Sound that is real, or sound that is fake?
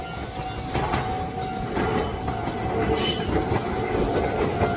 real